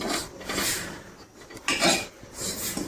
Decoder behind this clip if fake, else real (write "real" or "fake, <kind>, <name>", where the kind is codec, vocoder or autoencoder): real